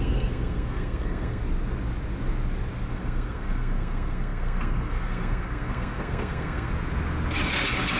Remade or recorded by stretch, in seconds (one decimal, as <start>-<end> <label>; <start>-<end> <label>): 0.0-1.4 remade; 1.4-2.9 recorded; 2.9-6.7 remade; 6.7-8.0 recorded